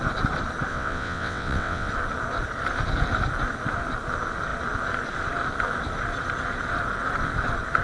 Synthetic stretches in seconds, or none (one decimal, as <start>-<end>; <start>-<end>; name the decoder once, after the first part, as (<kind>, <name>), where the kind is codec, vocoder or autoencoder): 0.7-1.9 (vocoder, WaveNeXt)